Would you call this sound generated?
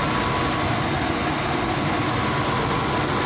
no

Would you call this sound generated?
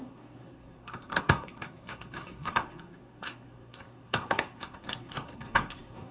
yes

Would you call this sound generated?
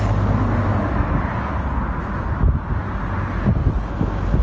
no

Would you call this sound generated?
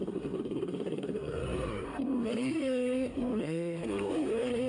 yes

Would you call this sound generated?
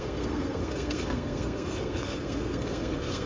yes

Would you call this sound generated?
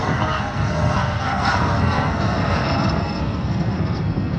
yes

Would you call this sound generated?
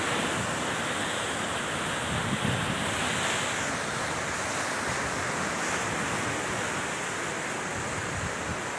no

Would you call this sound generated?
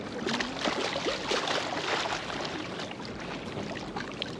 no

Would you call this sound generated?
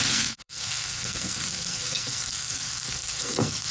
yes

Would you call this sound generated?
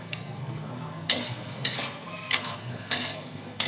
yes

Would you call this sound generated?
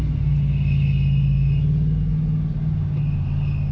no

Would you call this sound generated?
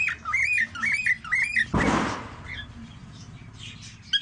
no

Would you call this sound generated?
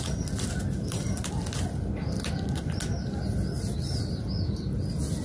no